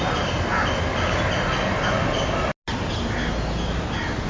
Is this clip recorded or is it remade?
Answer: recorded